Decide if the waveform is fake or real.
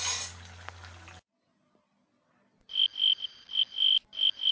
real